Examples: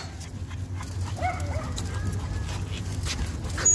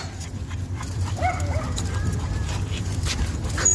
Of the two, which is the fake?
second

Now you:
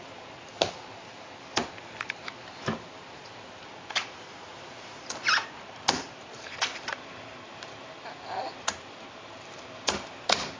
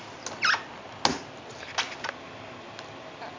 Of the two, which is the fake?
first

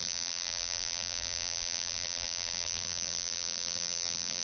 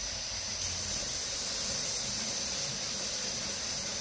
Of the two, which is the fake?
first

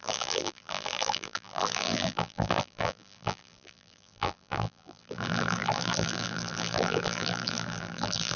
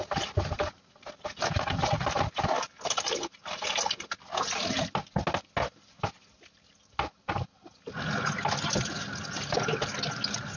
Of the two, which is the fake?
first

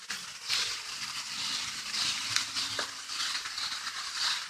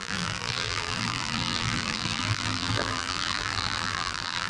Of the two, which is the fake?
second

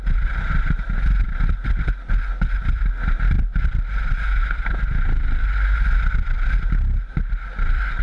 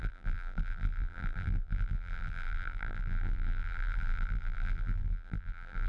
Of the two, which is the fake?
second